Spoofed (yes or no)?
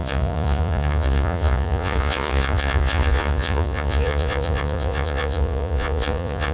yes